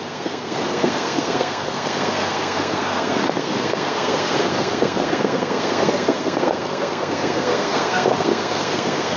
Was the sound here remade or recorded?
remade